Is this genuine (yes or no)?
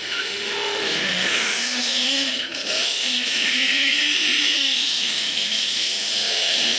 no